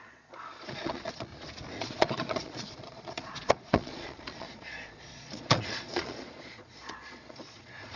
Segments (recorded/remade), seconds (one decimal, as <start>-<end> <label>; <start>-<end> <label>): 0.0-1.3 remade; 1.3-1.8 recorded; 1.8-8.0 remade